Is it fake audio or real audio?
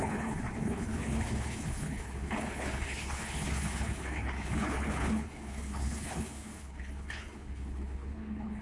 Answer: fake